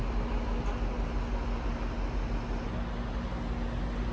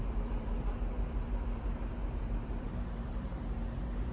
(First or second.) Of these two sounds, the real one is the first